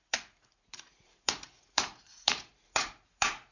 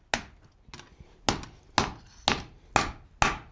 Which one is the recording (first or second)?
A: second